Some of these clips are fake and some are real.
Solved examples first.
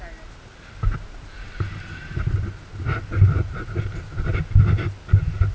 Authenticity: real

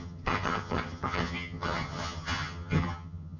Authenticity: fake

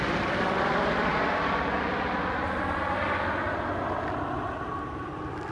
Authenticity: real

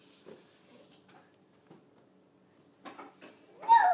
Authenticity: real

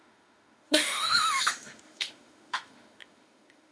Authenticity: fake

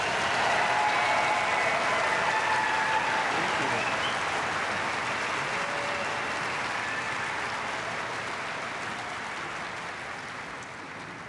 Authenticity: real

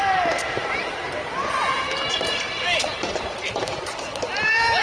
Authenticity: fake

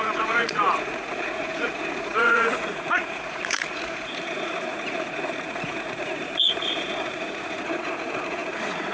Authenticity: fake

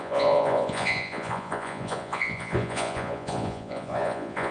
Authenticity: fake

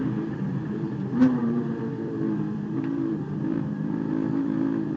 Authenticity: fake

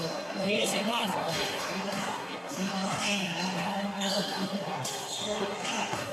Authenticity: fake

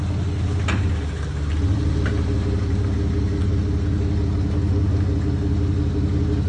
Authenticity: real